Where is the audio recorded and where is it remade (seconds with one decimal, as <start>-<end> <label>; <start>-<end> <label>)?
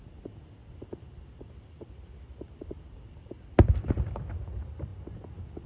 0.0-5.7 recorded